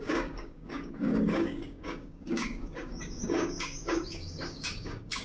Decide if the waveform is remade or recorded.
remade